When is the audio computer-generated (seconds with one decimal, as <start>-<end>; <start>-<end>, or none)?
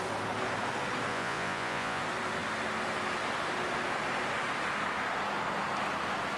1.1-2.0